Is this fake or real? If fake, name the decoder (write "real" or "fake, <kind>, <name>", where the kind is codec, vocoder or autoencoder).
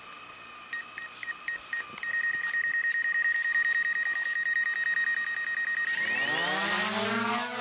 real